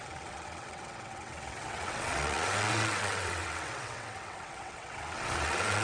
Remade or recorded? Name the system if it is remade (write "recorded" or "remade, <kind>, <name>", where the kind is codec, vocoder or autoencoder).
remade, vocoder, WaveNeXt